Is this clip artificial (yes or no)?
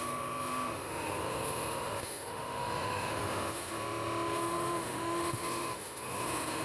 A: yes